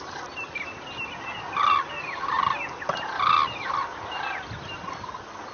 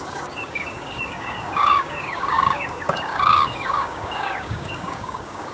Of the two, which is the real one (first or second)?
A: first